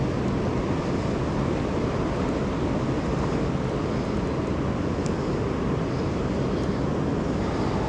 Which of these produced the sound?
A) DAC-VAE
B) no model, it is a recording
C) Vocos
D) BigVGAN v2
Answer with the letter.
B